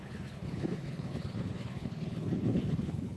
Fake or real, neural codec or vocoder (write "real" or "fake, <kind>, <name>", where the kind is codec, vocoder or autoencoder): fake, codec, HILCodec